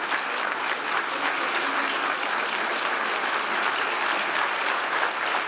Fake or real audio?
real